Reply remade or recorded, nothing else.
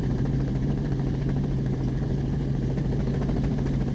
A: remade